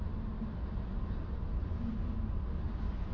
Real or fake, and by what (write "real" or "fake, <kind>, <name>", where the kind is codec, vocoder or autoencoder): fake, vocoder, BigVGAN v2